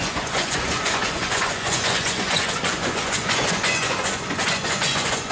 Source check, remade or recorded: remade